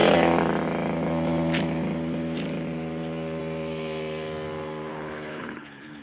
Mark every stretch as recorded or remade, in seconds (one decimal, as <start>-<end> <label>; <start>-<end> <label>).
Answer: 0.0-4.9 recorded; 4.9-6.0 remade